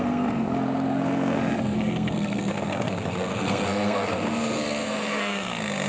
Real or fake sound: fake